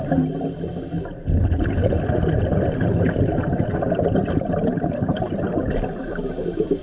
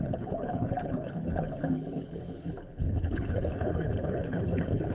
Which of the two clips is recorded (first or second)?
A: first